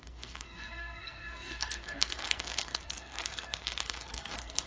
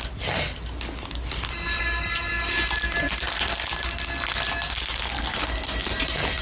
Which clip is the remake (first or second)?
first